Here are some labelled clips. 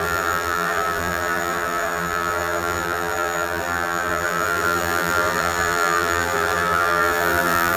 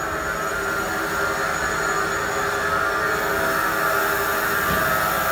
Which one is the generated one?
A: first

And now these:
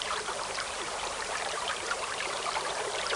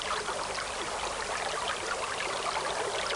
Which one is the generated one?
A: first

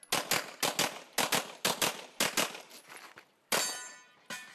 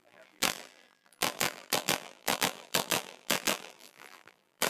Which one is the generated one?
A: second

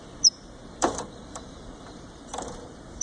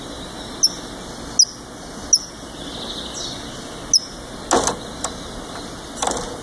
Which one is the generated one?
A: first